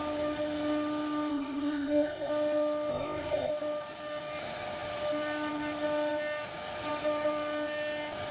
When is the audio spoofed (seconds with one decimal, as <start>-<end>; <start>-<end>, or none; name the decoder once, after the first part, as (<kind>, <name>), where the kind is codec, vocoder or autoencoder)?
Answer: 1.3-2.3 (codec, ZipCodec); 2.9-3.5